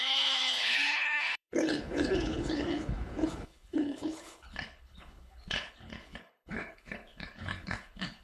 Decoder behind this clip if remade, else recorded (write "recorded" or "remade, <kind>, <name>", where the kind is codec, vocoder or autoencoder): remade, codec, HILCodec